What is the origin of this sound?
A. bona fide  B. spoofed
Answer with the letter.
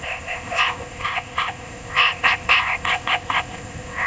B